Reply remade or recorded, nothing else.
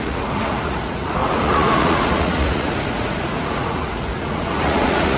remade